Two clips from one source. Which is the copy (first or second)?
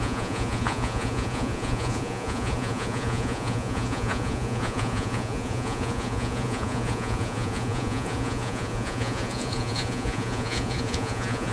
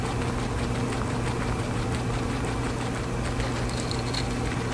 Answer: first